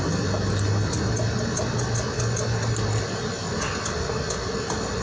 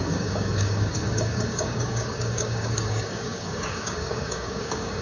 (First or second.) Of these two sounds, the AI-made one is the second